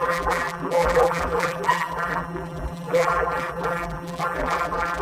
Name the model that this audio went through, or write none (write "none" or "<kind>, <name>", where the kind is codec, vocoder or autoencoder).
vocoder, BigVGAN v2